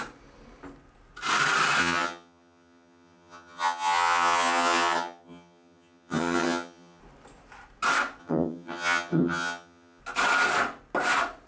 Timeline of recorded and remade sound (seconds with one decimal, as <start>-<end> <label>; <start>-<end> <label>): 0.0-1.8 recorded; 1.8-7.0 remade; 7.0-8.2 recorded; 8.2-10.0 remade; 10.0-11.5 recorded